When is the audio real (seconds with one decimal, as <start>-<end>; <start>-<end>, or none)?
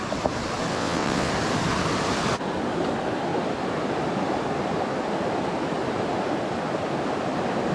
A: 0.0-0.7; 1.3-7.7